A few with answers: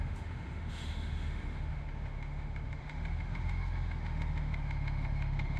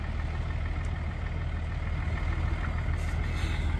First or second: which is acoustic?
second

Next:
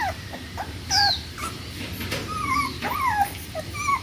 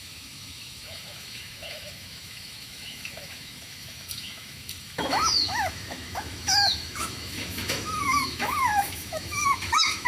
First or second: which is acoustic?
first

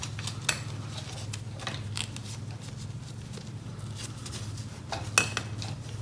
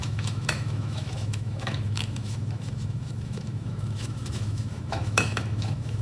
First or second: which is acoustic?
first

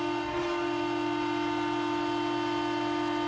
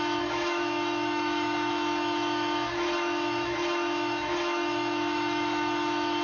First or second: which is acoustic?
first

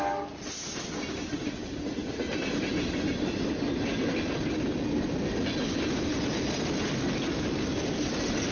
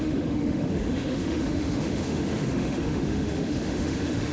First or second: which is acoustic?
first